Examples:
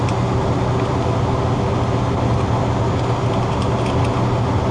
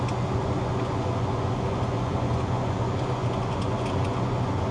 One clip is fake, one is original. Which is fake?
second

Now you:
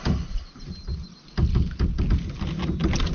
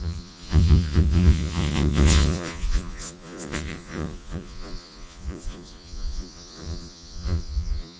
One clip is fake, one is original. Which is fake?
second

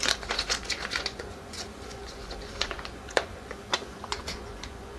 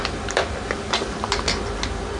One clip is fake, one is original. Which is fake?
first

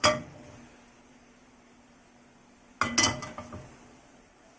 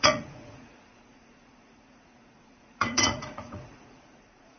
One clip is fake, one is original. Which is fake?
second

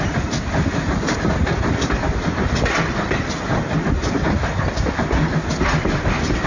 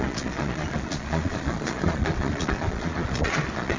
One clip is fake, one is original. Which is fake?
second